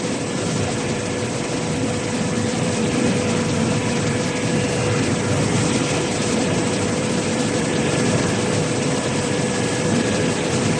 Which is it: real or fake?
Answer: fake